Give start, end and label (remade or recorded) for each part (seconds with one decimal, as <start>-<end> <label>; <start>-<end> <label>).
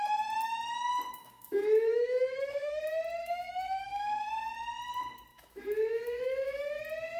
0.0-1.1 recorded; 1.1-2.8 remade; 2.8-3.2 recorded; 3.2-4.3 remade; 4.3-5.3 recorded; 5.3-6.8 remade; 6.8-7.2 recorded